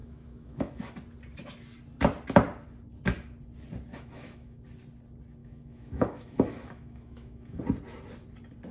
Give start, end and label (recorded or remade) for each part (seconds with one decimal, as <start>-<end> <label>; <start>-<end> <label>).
0.0-0.9 remade; 0.9-3.9 recorded; 3.9-4.6 remade; 4.6-5.4 recorded; 5.4-7.6 remade; 7.6-8.7 recorded